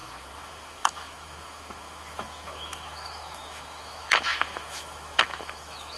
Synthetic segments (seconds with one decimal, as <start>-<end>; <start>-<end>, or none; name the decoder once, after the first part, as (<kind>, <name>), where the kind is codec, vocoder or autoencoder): 0.0-6.0 (autoencoder, DAC-VAE)